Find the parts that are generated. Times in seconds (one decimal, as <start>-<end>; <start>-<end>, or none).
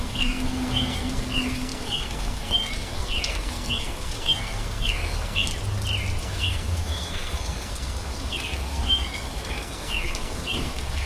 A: 0.0-5.5; 6.2-11.1